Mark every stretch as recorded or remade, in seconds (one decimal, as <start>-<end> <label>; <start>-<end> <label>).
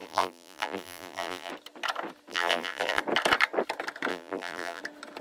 0.0-1.5 remade; 1.5-2.3 recorded; 2.3-3.0 remade; 3.0-4.1 recorded; 4.1-4.8 remade; 4.8-5.2 recorded